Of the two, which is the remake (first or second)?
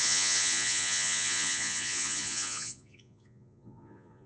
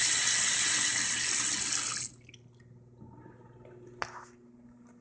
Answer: first